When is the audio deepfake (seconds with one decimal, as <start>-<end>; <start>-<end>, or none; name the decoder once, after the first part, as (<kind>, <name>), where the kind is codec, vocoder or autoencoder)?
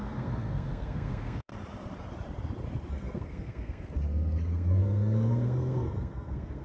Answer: 0.0-1.5 (codec, SNAC); 2.9-6.6